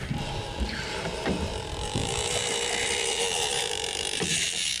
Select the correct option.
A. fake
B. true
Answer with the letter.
A